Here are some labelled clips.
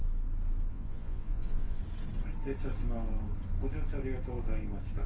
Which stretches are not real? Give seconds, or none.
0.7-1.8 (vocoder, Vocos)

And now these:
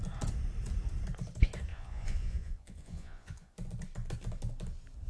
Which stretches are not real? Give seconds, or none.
1.7-3.5 (vocoder, Vocos)

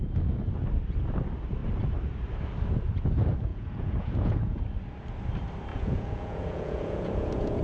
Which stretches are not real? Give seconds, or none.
3.5-4.6 (vocoder, Vocos); 5.7-7.6

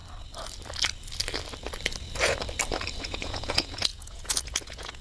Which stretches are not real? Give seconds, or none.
3.0-5.0 (vocoder, Vocos)